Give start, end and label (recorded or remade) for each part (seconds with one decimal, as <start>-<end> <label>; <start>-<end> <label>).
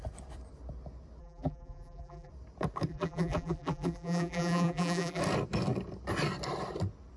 0.0-1.2 recorded; 1.2-2.3 remade; 2.3-2.9 recorded; 2.9-5.2 remade; 5.2-7.2 recorded